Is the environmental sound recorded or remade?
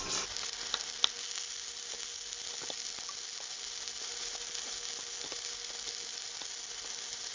recorded